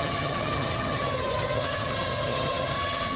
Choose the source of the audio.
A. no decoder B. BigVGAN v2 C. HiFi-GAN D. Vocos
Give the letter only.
C